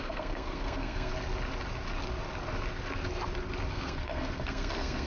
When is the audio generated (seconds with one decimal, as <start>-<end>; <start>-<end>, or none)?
0.0-1.1; 3.7-5.1